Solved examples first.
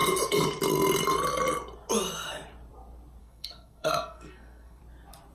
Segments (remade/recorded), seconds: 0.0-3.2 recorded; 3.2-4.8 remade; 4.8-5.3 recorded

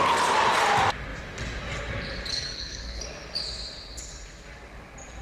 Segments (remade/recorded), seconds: 0.0-2.3 recorded; 2.3-3.0 remade; 3.0-5.2 recorded

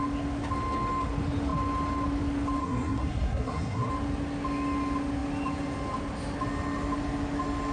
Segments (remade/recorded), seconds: 0.0-2.6 recorded; 2.6-3.9 remade; 3.9-7.7 recorded

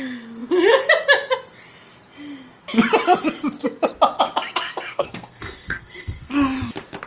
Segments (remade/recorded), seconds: 0.0-4.9 recorded; 4.9-6.3 remade; 6.3-7.1 recorded

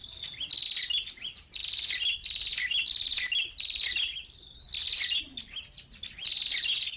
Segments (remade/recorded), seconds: 0.0-7.0 recorded